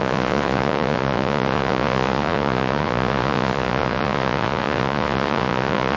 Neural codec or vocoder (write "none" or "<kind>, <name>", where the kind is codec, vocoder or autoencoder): vocoder, Vocos